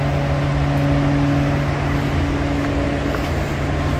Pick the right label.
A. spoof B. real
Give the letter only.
B